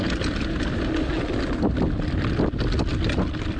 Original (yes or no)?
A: yes